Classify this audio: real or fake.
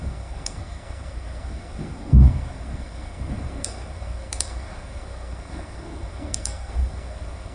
fake